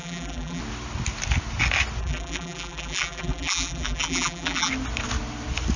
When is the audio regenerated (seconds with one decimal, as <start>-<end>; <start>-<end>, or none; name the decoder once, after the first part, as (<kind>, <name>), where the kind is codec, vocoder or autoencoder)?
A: 0.0-0.6 (vocoder, BigVGAN v2); 2.0-4.7